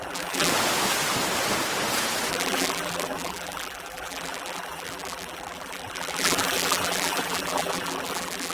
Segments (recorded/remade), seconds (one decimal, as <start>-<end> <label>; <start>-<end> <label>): 0.0-0.5 remade; 0.5-2.3 recorded; 2.3-8.5 remade